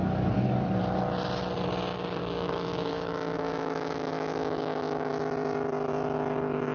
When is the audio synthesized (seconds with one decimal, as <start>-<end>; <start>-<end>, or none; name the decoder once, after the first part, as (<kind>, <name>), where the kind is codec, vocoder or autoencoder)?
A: 2.2-5.1 (codec, DAC)